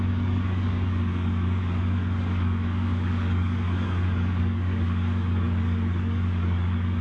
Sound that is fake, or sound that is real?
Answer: fake